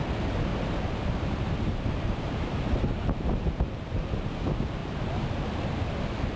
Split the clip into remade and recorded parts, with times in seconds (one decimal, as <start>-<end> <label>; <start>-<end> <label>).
0.0-0.5 recorded; 0.5-4.3 remade; 4.3-4.8 recorded; 4.8-5.9 remade; 5.9-6.4 recorded